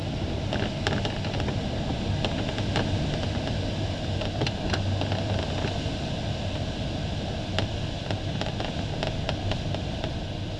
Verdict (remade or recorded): recorded